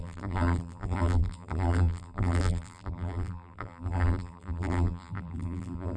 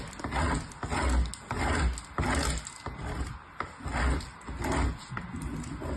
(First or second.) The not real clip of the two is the first